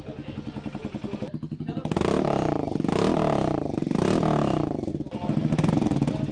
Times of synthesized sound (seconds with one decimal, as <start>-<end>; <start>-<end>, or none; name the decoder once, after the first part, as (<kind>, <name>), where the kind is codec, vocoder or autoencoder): 4.4-4.9 (vocoder, BigVGAN v2)